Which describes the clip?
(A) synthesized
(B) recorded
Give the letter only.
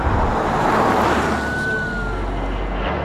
B